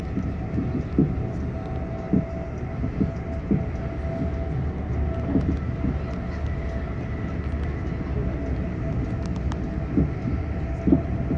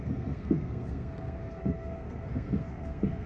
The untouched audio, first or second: first